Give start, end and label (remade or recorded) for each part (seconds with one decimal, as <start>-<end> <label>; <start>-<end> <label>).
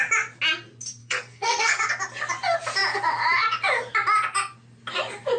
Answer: 0.0-1.0 recorded; 1.0-1.8 remade; 1.8-5.4 recorded